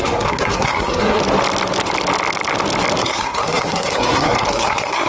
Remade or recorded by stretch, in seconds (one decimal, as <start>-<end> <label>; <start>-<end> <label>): 0.0-1.2 remade; 1.2-3.0 recorded; 3.0-5.1 remade

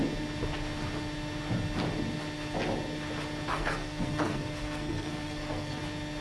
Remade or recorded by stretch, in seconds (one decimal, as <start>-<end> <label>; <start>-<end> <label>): 0.0-3.5 recorded; 3.5-5.8 remade; 5.8-6.2 recorded